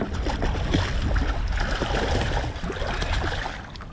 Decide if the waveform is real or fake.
real